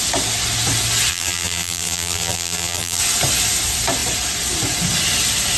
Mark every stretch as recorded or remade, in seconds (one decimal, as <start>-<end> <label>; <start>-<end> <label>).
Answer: 0.0-1.1 recorded; 1.1-3.0 remade; 3.0-5.6 recorded